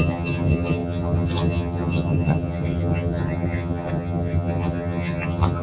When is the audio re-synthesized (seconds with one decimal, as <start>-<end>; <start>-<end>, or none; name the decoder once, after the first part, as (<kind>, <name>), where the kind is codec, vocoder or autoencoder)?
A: 0.0-5.6 (vocoder, HiFi-GAN)